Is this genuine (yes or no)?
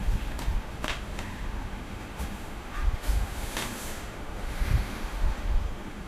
no